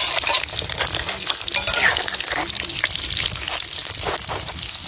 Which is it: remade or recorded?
recorded